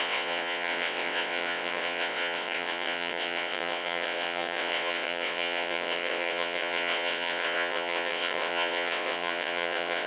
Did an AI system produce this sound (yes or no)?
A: yes